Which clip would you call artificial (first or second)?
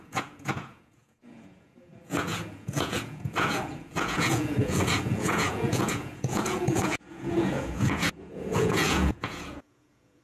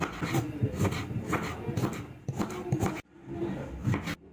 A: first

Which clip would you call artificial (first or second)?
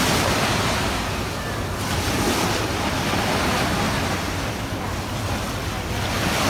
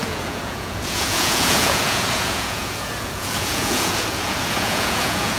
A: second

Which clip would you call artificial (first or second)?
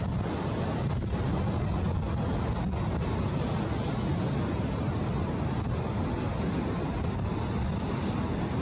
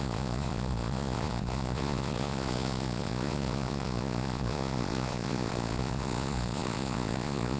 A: second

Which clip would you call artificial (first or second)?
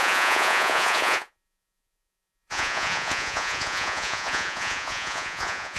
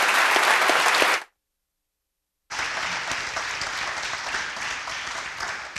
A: first